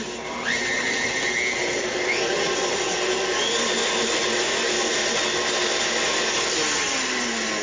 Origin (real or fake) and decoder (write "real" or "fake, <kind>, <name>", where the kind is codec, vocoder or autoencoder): real